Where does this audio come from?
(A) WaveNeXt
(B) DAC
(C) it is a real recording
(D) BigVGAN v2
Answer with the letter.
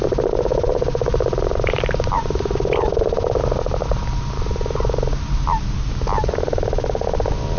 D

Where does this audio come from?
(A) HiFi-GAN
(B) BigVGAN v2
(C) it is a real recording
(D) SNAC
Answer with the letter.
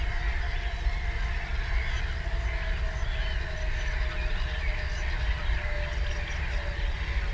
C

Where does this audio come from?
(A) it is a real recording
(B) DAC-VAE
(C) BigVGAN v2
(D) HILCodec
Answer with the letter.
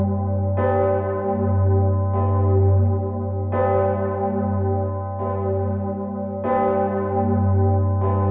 A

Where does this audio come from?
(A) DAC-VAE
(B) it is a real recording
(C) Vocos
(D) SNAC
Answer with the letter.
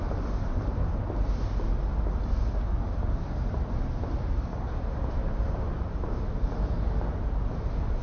B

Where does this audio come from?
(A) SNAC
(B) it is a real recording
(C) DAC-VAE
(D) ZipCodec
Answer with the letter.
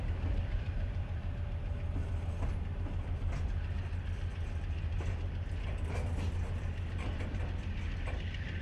B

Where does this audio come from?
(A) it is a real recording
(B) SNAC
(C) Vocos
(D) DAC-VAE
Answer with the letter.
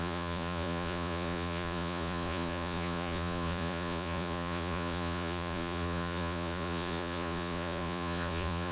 C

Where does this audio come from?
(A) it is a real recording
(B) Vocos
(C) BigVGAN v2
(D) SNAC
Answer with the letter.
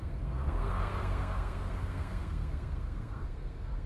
D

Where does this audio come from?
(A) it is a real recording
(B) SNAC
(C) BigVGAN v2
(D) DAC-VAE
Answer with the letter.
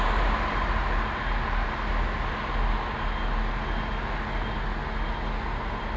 A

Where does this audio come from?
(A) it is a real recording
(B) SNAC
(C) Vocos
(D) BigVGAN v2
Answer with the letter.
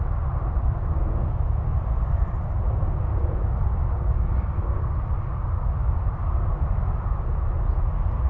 A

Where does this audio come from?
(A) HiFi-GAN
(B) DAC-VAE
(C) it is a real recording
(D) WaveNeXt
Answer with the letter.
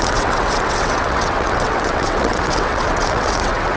D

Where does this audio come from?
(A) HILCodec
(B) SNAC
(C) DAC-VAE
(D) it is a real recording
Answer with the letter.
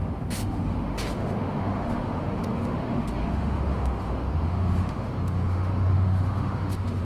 C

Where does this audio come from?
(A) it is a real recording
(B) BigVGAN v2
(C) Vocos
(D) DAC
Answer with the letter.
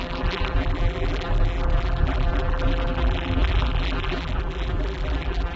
B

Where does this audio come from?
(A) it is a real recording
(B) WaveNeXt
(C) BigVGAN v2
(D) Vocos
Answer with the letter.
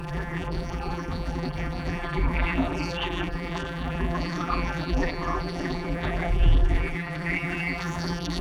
C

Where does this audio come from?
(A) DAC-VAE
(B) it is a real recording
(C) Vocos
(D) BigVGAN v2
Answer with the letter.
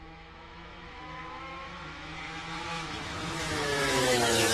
A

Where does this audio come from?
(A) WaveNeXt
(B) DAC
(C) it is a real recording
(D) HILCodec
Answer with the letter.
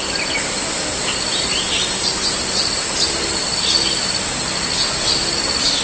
C